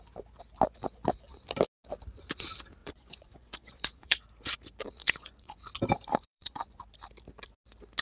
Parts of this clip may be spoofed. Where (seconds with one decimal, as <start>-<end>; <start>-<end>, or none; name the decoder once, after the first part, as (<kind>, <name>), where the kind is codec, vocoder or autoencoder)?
2.8-4.2 (vocoder, Vocos); 5.0-5.6; 6.1-6.8